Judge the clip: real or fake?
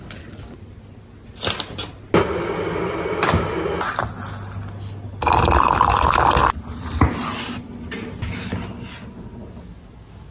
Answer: real